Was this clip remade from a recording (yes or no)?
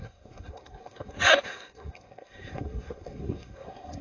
yes